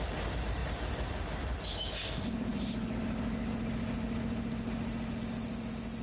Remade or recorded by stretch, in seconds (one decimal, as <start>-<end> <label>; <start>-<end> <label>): 0.0-6.0 recorded